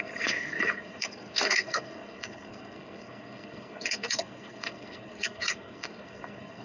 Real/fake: fake